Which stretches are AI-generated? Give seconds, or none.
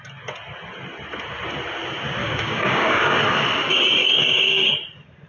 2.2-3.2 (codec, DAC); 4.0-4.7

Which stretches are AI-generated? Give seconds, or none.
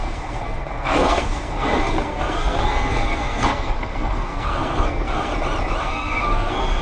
0.0-5.3 (codec, SNAC); 5.8-6.8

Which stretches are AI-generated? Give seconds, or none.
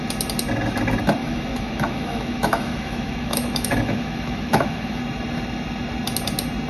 1.2-5.0 (autoencoder, DAC-VAE)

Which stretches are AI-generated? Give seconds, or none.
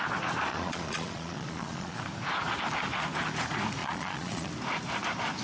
0.5-2.0 (vocoder, Vocos); 3.8-4.5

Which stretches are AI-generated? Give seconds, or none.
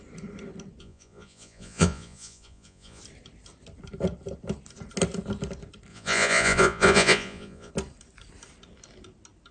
0.8-3.0 (vocoder, Vocos); 5.9-7.7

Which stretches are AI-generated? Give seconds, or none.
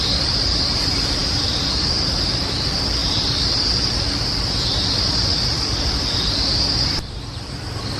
none